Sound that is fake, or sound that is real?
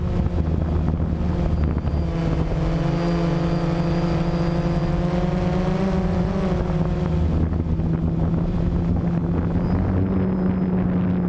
real